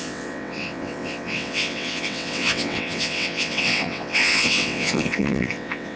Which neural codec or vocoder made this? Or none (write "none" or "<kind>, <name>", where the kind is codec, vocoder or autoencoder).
vocoder, WaveNeXt